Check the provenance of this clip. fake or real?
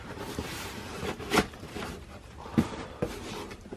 fake